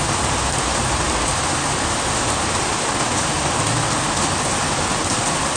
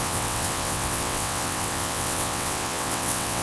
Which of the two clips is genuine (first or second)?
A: first